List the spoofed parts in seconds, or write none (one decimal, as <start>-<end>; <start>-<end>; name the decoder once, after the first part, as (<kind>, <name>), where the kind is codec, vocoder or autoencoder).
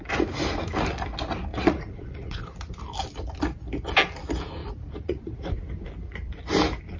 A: 1.5-2.4 (vocoder, Vocos); 4.6-5.5